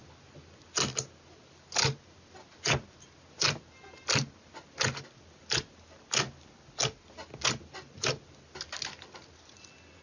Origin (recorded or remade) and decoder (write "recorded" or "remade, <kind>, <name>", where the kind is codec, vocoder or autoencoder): recorded